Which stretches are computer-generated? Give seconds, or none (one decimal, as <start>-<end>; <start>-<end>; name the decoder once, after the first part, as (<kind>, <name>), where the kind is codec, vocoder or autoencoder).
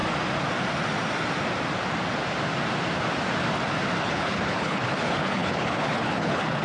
4.0-6.6 (codec, HILCodec)